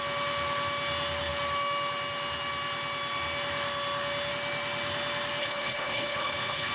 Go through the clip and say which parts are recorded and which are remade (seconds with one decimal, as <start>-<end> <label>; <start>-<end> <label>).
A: 0.0-5.4 recorded; 5.4-6.7 remade